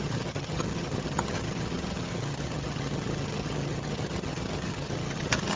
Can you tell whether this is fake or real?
fake